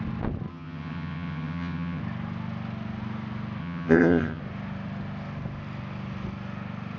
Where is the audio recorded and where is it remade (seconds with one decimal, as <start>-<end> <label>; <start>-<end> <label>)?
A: 0.0-0.5 recorded; 0.5-2.0 remade; 2.0-3.6 recorded; 3.6-4.4 remade; 4.4-7.0 recorded